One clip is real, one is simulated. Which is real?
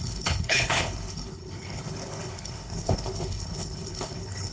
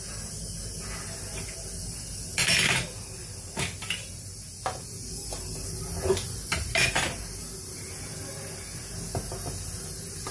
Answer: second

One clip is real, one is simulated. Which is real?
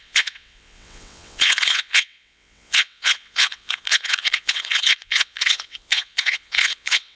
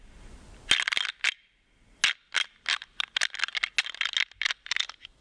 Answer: second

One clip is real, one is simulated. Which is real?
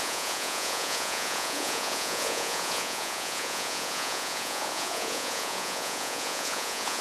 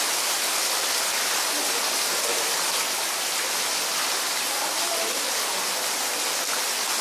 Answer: second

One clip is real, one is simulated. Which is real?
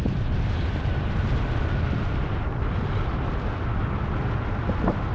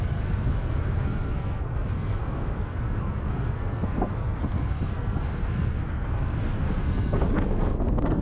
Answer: first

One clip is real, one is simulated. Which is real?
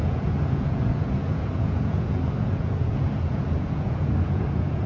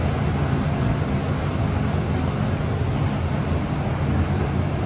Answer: second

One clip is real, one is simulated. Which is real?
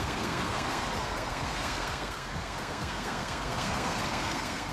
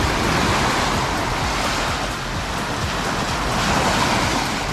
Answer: second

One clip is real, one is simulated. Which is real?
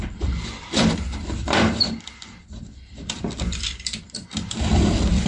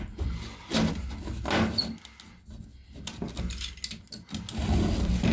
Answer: second